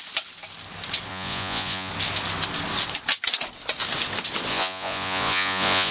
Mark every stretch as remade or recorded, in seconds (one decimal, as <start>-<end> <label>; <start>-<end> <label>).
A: 0.0-1.1 recorded; 1.1-1.9 remade; 1.9-4.5 recorded; 4.5-5.9 remade